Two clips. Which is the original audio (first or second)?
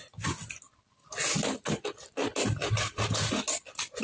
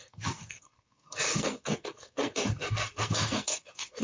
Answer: first